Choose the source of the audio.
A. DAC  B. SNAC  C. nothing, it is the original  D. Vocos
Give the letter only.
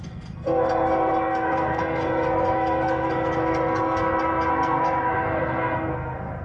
B